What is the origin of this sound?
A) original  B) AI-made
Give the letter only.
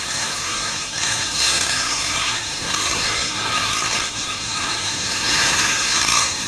B